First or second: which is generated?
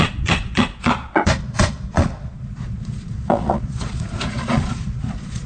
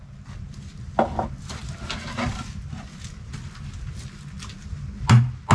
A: first